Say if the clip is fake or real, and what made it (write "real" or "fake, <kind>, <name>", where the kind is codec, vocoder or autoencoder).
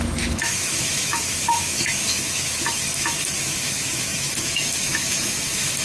fake, autoencoder, DAC-VAE